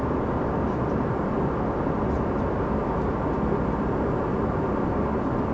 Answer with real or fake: real